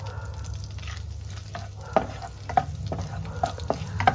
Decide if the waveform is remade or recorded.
recorded